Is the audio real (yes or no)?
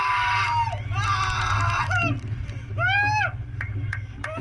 yes